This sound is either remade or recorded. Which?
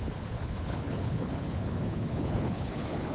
remade